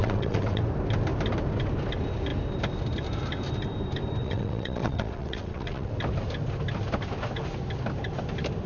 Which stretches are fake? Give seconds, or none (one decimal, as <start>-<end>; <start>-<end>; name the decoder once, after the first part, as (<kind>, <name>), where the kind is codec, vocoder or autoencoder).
0.0-0.6 (vocoder, WaveNeXt); 4.2-5.9